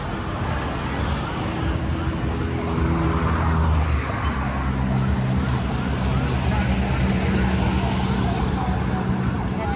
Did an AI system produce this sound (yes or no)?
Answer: no